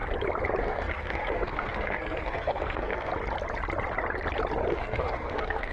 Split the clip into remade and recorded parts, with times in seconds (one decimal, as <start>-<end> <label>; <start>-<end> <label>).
0.0-0.6 recorded; 0.6-3.1 remade; 3.1-4.7 recorded; 4.7-5.7 remade